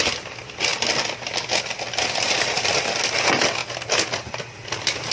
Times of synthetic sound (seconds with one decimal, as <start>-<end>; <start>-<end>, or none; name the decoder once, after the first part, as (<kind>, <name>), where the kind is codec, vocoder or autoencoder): none